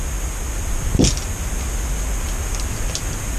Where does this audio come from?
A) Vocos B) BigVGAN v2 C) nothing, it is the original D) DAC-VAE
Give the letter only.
C